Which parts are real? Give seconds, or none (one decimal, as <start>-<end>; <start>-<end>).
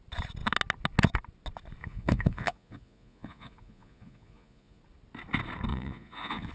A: 0.0-1.8; 4.8-5.7